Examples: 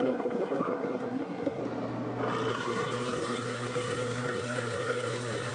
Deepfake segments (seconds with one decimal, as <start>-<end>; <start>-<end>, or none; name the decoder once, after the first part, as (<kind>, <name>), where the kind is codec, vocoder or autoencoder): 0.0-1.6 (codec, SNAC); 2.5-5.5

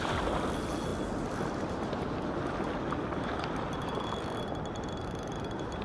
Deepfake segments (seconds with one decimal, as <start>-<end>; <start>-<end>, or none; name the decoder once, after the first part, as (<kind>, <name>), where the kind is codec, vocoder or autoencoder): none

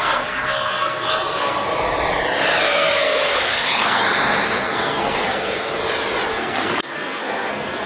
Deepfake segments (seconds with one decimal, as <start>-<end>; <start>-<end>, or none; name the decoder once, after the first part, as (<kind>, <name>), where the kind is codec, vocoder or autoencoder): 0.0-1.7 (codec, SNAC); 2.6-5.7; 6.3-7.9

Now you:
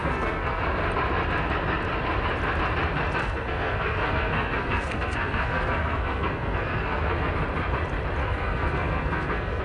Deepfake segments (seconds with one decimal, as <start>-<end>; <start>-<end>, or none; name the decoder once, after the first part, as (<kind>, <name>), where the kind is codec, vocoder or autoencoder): 0.0-0.6 (codec, SNAC); 3.2-7.3; 8.2-9.6

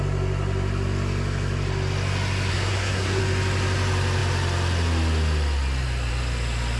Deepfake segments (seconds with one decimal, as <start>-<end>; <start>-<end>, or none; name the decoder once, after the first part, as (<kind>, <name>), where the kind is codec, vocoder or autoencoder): 2.5-3.2 (codec, SNAC)